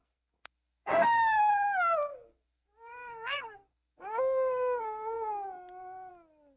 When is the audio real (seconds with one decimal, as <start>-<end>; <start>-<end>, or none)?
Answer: 1.5-2.1; 6.1-6.6